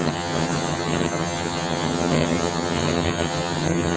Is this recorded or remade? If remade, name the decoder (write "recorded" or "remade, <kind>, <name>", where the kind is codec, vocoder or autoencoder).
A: remade, vocoder, HiFi-GAN